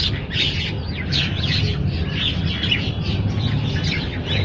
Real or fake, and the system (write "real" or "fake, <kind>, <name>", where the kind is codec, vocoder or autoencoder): real